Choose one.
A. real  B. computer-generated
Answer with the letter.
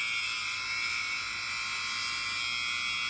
A